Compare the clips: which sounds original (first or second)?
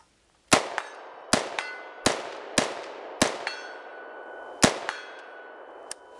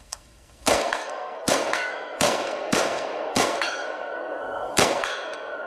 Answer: first